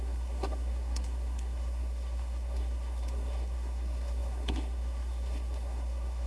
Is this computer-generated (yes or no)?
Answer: yes